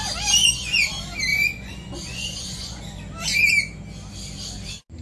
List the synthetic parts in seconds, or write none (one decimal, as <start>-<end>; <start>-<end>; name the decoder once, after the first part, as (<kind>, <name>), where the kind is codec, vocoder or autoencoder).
0.4-0.9 (vocoder, Vocos); 1.3-2.8